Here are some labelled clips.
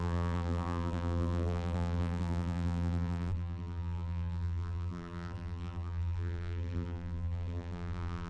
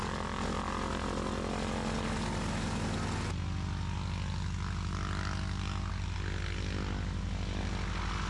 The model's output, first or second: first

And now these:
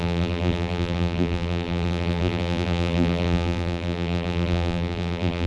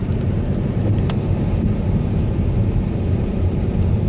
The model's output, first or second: first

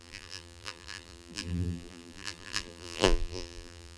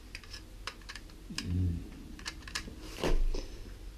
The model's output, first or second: first